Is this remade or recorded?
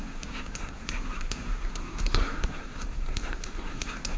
remade